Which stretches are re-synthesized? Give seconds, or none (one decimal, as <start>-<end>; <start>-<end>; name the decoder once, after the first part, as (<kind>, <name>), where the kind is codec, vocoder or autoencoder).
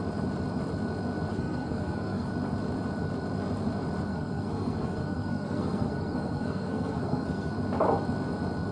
1.3-2.3 (codec, SNAC); 4.1-7.5